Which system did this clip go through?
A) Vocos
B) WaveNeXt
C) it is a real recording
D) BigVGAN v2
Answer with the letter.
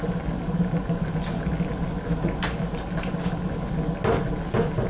C